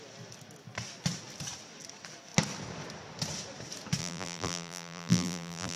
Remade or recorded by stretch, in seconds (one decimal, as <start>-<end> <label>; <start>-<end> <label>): 0.0-4.0 recorded; 4.0-5.8 remade